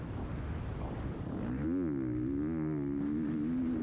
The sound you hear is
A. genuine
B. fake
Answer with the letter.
A